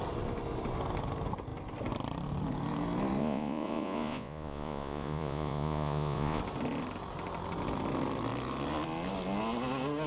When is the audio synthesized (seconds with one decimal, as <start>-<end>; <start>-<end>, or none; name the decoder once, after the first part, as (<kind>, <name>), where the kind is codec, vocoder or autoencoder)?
3.2-6.4 (vocoder, Vocos)